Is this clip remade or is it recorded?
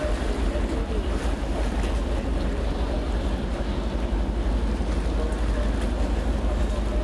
recorded